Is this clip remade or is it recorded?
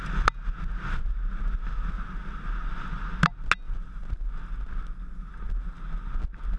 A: recorded